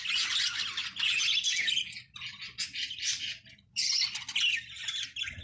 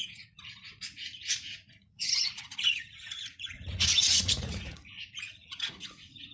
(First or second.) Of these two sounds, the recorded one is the first